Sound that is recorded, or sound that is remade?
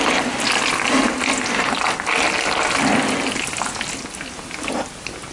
recorded